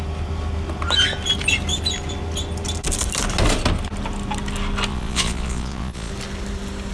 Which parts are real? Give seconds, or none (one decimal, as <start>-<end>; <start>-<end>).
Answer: 0.0-4.9; 6.1-6.9